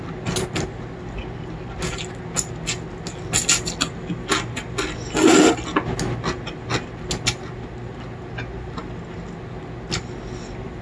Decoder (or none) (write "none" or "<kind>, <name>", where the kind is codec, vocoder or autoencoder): none